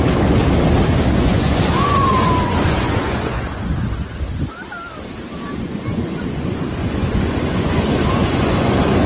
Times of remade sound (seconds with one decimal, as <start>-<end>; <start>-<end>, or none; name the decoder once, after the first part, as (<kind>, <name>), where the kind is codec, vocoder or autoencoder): 0.0-0.4 (vocoder, Vocos); 1.1-3.7; 5.6-9.1